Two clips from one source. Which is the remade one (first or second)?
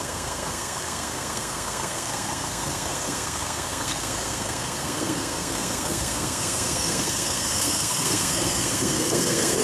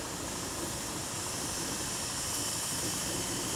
first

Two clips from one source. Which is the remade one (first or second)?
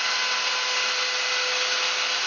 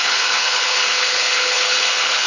second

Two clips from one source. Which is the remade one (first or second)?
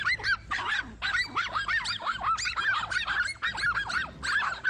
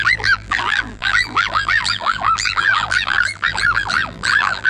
second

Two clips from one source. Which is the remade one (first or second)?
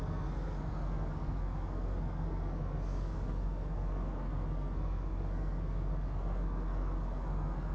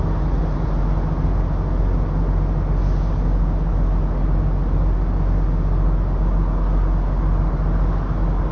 first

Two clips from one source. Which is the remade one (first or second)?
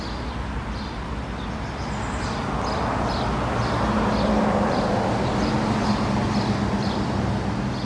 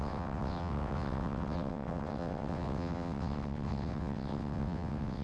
second